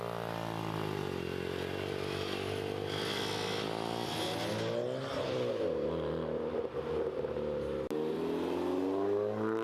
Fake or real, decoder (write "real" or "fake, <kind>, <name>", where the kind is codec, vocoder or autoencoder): real